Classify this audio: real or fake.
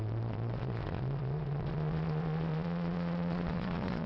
fake